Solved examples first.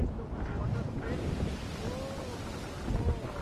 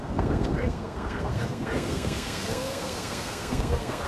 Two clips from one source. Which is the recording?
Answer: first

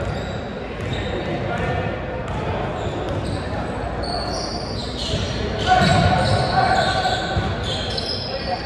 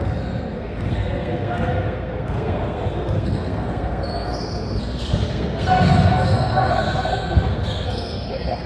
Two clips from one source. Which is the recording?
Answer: first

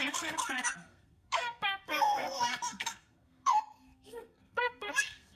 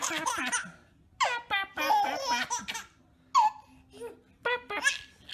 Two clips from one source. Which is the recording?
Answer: second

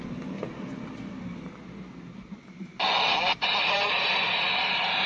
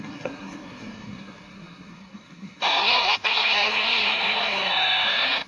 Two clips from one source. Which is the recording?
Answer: first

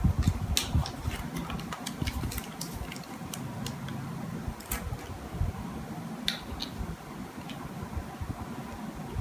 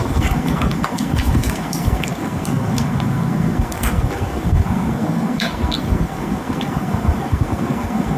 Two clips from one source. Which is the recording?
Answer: first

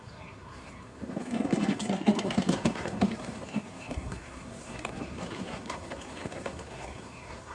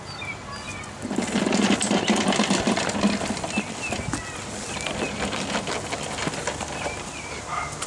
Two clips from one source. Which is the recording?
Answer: second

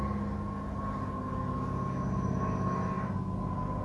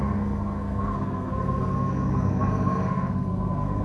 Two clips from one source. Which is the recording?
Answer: first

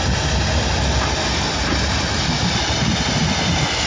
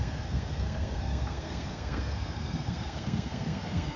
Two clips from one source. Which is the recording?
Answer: first